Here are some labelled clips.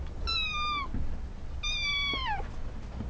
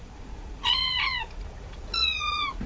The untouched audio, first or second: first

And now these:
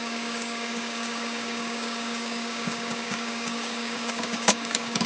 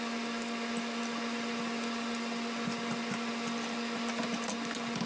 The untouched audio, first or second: second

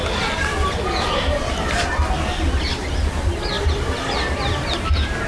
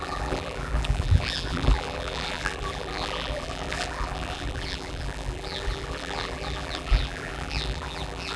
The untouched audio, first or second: first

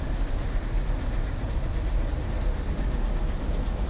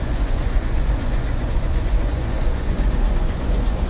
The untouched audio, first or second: first